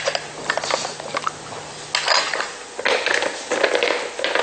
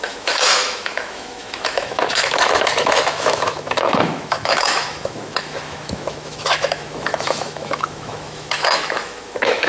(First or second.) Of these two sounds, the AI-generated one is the second